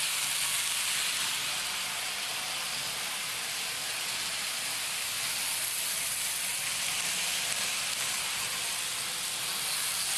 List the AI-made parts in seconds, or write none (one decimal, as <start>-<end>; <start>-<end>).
none